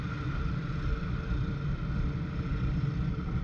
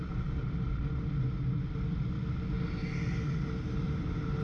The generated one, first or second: first